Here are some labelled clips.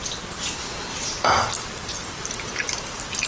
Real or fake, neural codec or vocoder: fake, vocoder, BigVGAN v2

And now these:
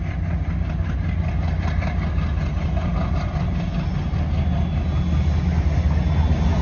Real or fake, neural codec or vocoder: real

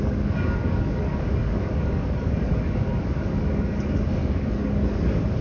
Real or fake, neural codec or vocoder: fake, codec, DAC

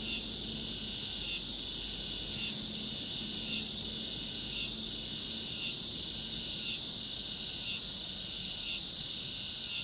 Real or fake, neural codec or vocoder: real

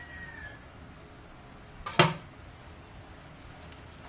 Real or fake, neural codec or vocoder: real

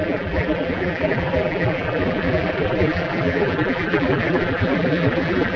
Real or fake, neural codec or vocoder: fake, vocoder, BigVGAN v2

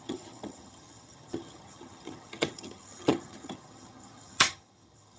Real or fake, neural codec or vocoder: fake, vocoder, HiFi-GAN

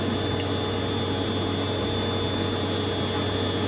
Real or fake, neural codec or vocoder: real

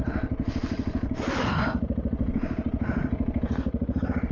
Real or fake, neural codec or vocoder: real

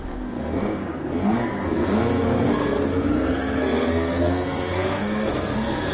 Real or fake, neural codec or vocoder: fake, codec, SNAC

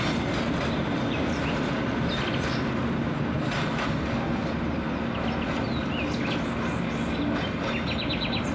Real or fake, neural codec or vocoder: real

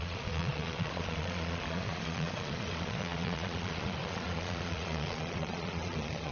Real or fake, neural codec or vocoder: fake, vocoder, Vocos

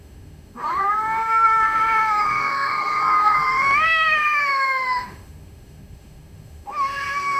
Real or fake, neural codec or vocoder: fake, autoencoder, DAC-VAE